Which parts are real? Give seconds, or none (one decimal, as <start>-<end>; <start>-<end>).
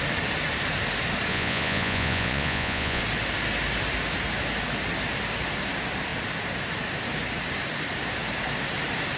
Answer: 0.0-1.3; 3.0-9.2